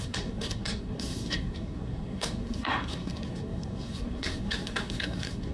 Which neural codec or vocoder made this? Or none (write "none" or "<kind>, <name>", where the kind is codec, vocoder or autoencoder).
codec, SNAC